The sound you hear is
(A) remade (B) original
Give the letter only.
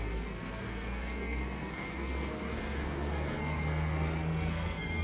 A